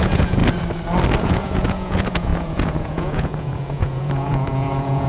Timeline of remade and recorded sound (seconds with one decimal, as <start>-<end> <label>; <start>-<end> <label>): 0.0-0.4 remade; 0.4-1.2 recorded; 1.2-5.1 remade